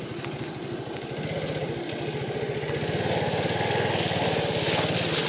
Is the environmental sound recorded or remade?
recorded